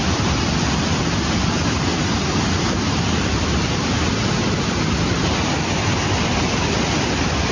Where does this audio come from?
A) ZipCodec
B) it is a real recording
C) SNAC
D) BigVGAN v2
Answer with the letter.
B